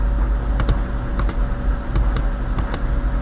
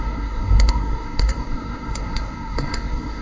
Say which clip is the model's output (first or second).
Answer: second